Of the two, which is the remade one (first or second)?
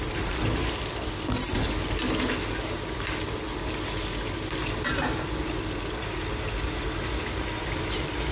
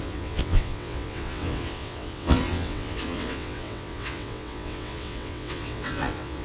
second